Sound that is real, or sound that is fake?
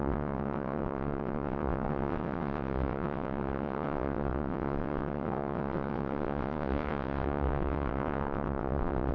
fake